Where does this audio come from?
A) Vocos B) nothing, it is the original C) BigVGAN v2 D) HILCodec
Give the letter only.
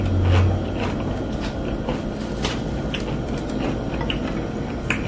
B